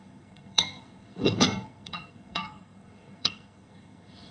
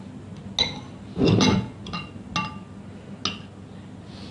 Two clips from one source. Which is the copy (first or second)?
first